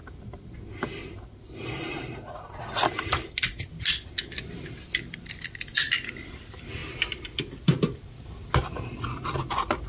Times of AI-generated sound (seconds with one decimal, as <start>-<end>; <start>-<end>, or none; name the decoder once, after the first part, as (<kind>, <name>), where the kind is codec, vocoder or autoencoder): none